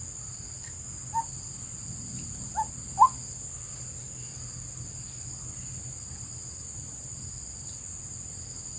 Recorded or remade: recorded